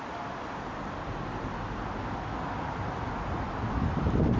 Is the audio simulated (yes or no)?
no